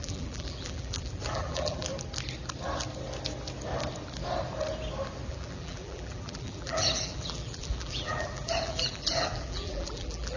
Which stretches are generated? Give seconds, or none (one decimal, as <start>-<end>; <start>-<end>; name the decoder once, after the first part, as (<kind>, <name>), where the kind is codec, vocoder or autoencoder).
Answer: 0.0-1.9 (vocoder, BigVGAN v2); 5.3-10.4